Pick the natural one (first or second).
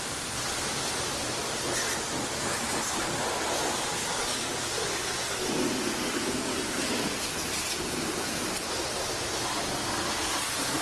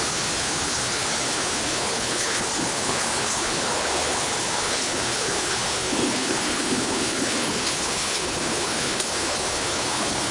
first